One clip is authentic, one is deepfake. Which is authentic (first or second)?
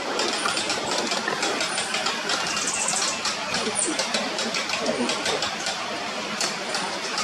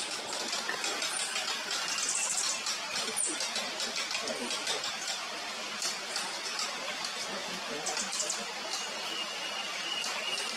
second